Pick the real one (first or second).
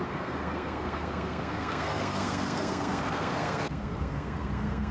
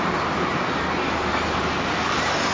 second